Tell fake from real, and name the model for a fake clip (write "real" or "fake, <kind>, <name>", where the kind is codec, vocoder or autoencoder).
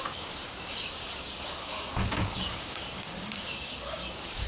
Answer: fake, codec, DAC